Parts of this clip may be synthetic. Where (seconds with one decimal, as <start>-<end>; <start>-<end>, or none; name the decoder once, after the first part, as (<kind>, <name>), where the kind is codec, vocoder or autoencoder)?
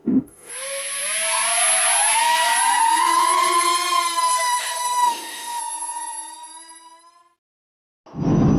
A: 0.0-0.5 (autoencoder, DAC-VAE); 4.3-5.6